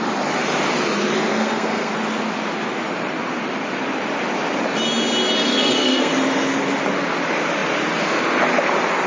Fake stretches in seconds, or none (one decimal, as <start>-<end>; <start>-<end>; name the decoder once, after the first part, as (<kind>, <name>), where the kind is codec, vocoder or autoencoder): 1.3-1.9 (codec, SNAC); 5.5-6.1